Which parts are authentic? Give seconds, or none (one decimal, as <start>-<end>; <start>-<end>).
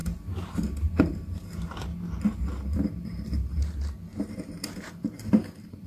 1.9-2.4